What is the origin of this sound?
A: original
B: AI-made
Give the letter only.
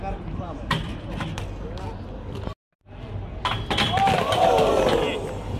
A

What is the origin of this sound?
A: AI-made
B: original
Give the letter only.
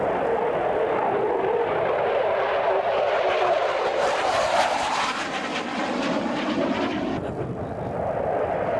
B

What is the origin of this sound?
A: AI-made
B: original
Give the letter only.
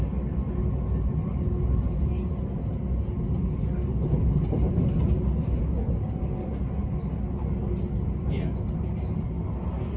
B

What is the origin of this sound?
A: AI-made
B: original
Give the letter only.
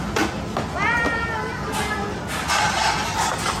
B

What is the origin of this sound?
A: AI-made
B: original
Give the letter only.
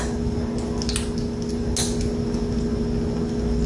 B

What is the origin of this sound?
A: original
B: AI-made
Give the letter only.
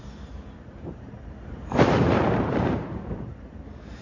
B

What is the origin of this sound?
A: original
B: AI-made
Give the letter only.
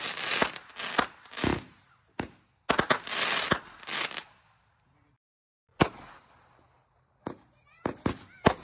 A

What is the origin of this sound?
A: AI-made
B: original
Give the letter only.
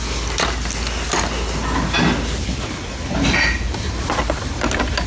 B